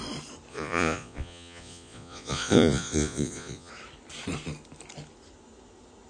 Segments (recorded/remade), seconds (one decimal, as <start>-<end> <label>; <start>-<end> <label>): 0.0-0.5 recorded; 0.5-3.7 remade; 3.7-6.1 recorded

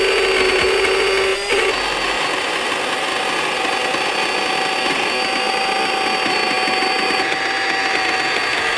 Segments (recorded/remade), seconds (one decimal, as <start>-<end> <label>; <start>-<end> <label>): 0.0-8.8 recorded